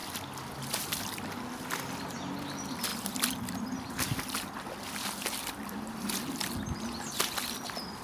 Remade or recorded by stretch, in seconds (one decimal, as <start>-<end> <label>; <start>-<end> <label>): 0.0-8.0 recorded